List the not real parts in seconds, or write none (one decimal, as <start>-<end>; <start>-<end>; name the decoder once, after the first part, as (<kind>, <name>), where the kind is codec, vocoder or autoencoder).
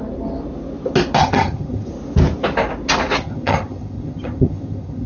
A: 1.2-1.9 (vocoder, HiFi-GAN); 3.2-5.1